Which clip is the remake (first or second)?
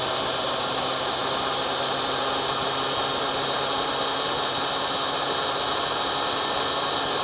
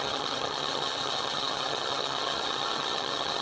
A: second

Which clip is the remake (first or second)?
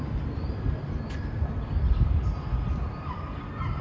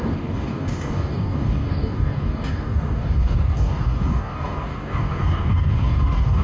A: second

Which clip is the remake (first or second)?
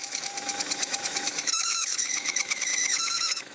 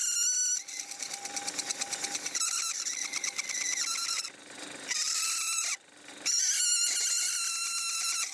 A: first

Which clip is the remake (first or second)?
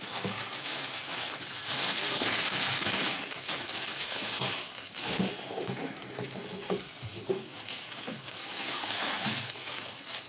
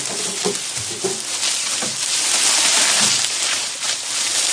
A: first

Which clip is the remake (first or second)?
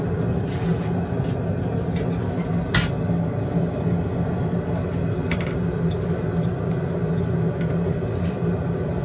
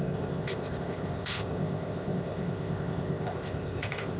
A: second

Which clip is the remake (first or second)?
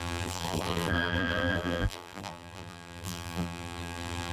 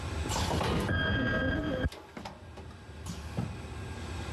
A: first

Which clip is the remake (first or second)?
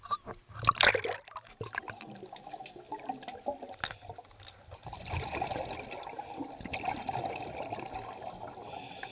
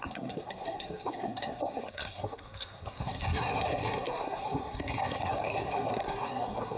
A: second